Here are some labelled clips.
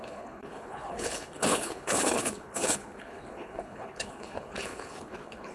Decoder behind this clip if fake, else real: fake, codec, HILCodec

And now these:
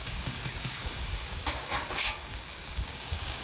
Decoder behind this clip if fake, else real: fake, codec, DAC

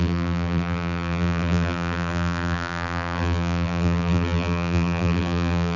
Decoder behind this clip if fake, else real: fake, vocoder, BigVGAN v2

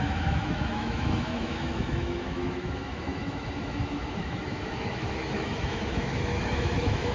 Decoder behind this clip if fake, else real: fake, autoencoder, DAC-VAE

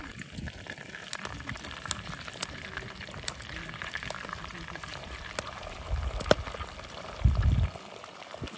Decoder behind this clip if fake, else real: real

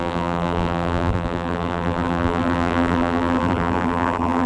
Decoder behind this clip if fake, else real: fake, vocoder, BigVGAN v2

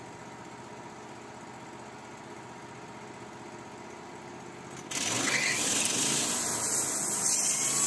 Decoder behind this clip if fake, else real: real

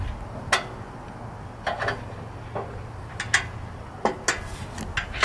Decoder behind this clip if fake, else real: real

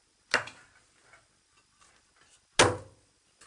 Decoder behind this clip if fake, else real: real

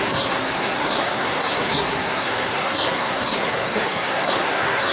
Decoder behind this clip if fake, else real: fake, codec, SNAC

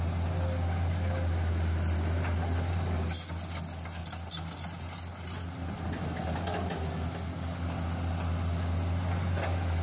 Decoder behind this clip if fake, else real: real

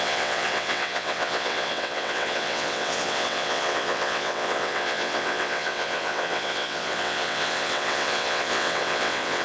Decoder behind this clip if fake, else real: fake, vocoder, WaveNeXt